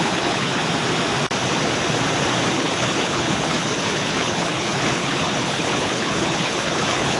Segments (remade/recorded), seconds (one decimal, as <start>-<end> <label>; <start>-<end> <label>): 0.0-0.6 remade; 0.6-2.5 recorded; 2.5-7.2 remade